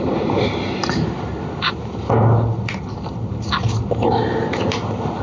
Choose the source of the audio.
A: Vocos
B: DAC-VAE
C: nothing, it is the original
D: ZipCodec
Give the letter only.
C